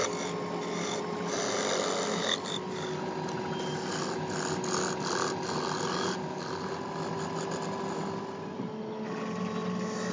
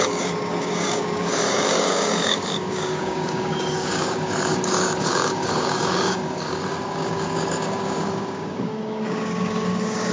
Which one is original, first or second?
first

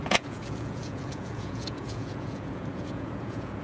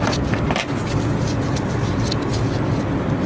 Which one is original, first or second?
second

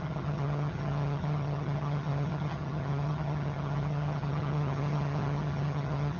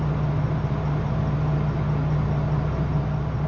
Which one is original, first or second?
second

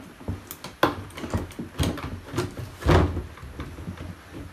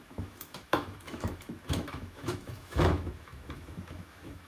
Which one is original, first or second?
first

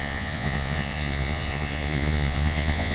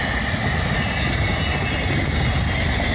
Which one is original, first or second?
second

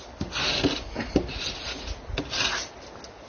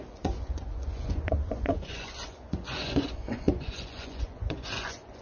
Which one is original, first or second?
first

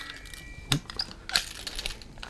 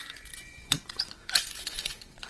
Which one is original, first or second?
first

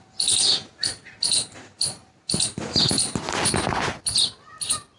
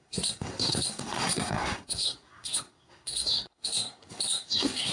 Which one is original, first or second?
first